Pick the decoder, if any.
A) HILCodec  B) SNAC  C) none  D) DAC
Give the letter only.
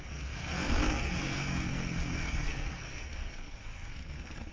B